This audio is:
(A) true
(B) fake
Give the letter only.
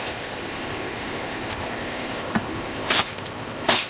B